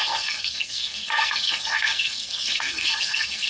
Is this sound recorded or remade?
remade